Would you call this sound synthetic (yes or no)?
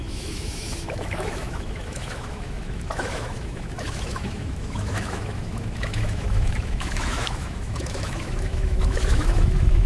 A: yes